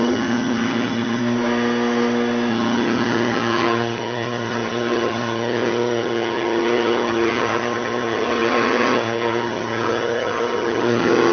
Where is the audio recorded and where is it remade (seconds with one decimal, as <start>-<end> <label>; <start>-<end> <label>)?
0.0-1.2 remade; 1.2-2.5 recorded; 2.5-11.3 remade